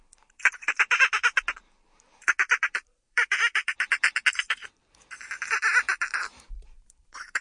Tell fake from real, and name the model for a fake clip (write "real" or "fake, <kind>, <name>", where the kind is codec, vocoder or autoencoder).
fake, vocoder, BigVGAN v2